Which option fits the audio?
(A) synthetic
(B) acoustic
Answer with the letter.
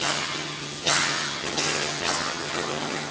A